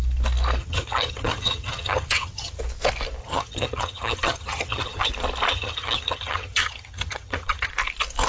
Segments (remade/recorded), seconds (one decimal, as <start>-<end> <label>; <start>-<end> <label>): 0.0-0.6 recorded; 0.6-2.6 remade; 2.6-3.2 recorded; 3.2-5.1 remade; 5.1-5.5 recorded; 5.5-7.7 remade; 7.7-8.3 recorded